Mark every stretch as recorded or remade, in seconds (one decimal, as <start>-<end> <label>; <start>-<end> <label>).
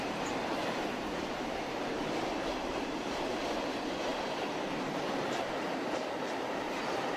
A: 0.0-0.6 recorded; 0.6-3.5 remade; 3.5-4.1 recorded; 4.1-5.5 remade; 5.5-7.2 recorded